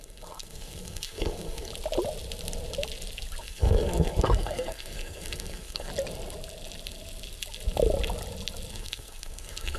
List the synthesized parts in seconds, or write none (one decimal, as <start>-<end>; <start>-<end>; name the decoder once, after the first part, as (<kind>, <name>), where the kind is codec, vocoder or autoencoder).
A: 0.0-1.7 (codec, SNAC); 3.4-5.9; 8.7-9.8